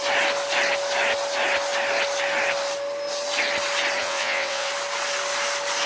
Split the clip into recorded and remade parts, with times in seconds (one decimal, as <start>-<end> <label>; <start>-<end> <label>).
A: 0.0-4.0 recorded; 4.0-4.7 remade; 4.7-5.9 recorded

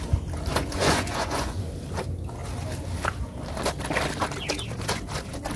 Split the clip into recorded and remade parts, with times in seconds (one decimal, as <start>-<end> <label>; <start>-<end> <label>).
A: 0.0-0.5 recorded; 0.5-1.6 remade; 1.6-5.6 recorded

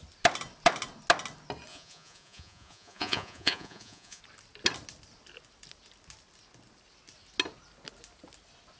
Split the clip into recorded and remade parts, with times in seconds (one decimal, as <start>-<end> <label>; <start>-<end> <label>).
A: 0.0-1.7 recorded; 1.7-4.2 remade; 4.2-8.8 recorded